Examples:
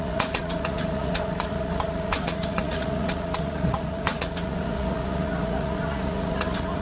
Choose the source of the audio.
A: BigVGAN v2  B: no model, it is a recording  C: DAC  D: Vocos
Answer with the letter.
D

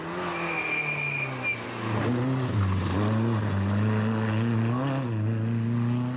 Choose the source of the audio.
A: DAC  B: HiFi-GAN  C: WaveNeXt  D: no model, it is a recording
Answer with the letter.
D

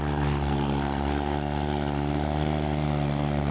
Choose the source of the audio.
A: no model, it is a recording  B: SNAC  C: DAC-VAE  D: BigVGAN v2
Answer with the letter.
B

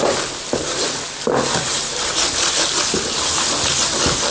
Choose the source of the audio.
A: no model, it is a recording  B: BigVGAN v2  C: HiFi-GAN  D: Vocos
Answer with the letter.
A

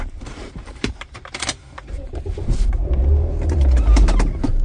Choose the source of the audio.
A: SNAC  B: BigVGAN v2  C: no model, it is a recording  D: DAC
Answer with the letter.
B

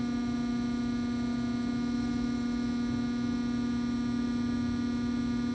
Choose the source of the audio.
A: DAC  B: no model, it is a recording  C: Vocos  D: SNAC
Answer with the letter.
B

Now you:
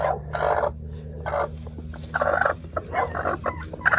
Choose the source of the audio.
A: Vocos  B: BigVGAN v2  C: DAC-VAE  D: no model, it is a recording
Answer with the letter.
D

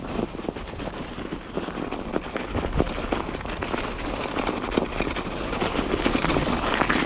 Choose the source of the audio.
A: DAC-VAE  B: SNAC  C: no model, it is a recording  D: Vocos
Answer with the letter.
C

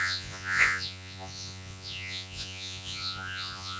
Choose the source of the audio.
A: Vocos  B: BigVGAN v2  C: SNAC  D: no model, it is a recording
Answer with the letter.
A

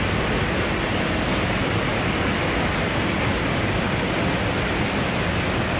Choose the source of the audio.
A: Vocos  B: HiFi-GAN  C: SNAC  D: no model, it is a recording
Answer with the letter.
D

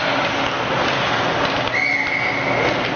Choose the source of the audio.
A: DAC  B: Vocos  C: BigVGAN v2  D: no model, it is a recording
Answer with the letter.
D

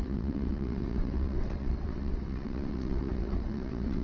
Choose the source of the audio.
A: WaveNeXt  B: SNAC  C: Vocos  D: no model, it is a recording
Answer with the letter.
A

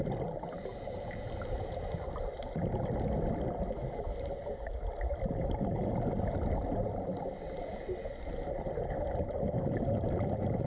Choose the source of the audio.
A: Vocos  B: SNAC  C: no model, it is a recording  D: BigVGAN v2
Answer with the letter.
C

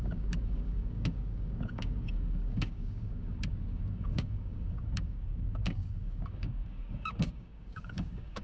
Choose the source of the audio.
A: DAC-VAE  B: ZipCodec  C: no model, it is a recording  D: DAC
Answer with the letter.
D